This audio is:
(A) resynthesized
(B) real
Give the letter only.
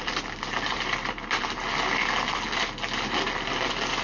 B